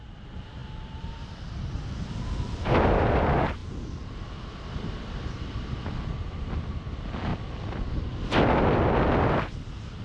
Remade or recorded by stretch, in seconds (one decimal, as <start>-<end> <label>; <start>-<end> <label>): 0.0-10.0 recorded